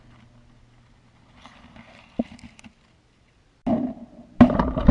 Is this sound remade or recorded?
recorded